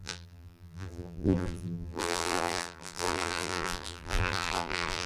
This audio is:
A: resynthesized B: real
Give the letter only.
A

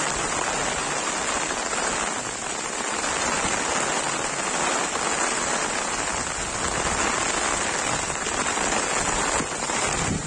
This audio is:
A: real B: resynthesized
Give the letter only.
A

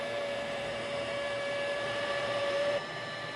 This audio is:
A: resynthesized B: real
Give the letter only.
A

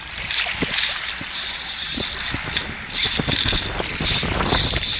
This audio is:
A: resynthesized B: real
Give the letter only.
B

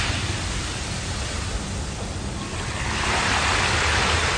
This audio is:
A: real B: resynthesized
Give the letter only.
A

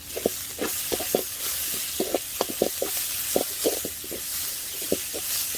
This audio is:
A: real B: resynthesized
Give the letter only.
A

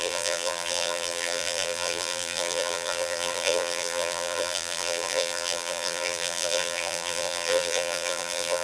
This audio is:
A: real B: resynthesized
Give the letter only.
B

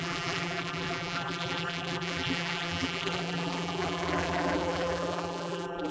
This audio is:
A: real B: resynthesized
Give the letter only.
B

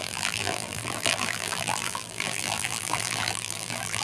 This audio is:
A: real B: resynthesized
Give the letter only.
B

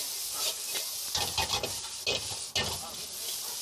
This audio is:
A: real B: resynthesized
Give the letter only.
A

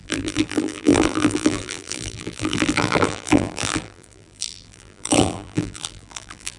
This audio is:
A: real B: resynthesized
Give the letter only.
B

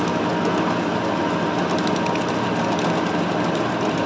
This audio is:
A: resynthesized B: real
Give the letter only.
B